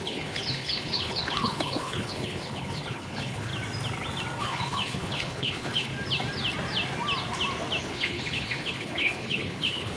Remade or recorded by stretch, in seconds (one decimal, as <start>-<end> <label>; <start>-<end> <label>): 0.0-3.5 remade; 3.5-4.4 recorded; 4.4-5.9 remade; 5.9-7.8 recorded; 7.8-10.0 remade